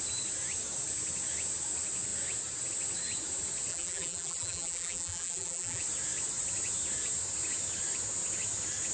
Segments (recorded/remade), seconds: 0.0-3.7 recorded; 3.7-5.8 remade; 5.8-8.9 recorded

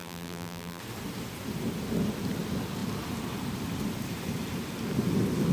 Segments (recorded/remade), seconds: 0.0-0.8 remade; 0.8-5.5 recorded

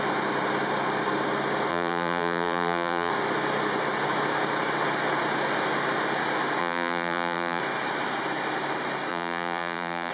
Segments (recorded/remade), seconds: 0.0-1.7 recorded; 1.7-3.1 remade; 3.1-6.6 recorded; 6.6-7.6 remade; 7.6-9.1 recorded; 9.1-10.1 remade

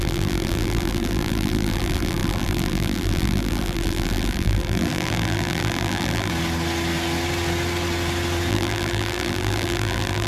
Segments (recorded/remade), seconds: 0.0-6.3 remade; 6.3-8.5 recorded; 8.5-10.3 remade

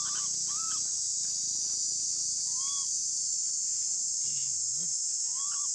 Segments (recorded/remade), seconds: 0.0-5.7 recorded

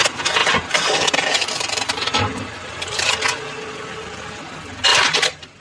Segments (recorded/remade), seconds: 0.0-0.4 recorded; 0.4-3.1 remade; 3.1-4.9 recorded; 4.9-5.6 remade

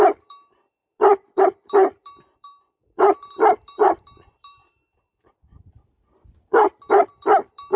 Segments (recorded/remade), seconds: 0.0-7.8 remade